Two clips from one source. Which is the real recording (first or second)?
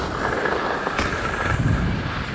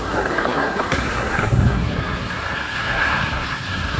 first